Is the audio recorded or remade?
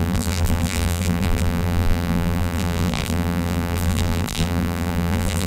remade